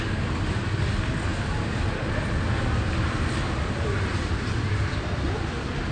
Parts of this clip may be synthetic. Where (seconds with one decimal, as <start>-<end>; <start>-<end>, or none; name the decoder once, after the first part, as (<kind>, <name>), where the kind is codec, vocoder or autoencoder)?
none